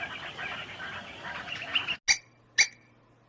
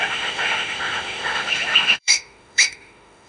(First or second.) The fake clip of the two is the second